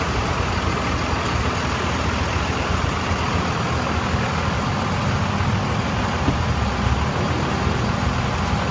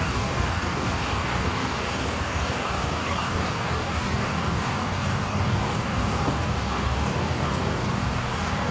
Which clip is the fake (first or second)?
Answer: second